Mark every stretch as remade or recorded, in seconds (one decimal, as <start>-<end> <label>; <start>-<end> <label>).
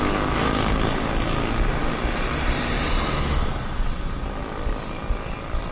0.0-5.7 recorded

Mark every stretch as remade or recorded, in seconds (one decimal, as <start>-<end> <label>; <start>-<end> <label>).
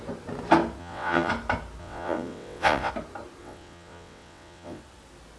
0.0-0.8 recorded; 0.8-1.3 remade; 1.3-1.8 recorded; 1.8-2.9 remade; 2.9-3.4 recorded; 3.4-4.8 remade; 4.8-5.4 recorded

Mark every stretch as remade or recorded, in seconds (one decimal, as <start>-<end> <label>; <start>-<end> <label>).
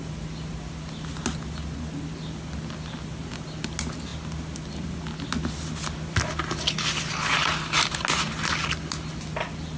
0.0-9.8 recorded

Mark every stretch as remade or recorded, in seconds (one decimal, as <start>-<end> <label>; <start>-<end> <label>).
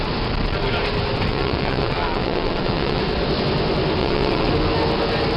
0.0-1.3 recorded; 1.3-3.0 remade; 3.0-4.0 recorded; 4.0-4.5 remade; 4.5-5.4 recorded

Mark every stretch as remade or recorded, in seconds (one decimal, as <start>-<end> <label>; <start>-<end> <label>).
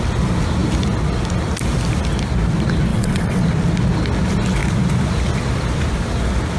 0.0-2.9 recorded; 2.9-3.4 remade; 3.4-6.6 recorded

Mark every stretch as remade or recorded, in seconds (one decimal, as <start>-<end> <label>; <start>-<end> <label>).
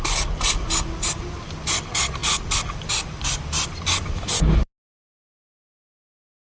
0.0-6.6 recorded